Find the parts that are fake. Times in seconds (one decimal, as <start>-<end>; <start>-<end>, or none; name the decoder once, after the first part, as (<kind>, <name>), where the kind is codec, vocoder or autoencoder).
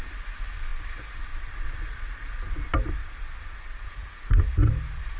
none